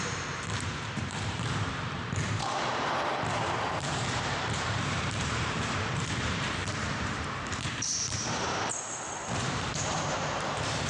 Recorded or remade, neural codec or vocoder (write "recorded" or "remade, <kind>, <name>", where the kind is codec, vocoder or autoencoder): remade, vocoder, BigVGAN v2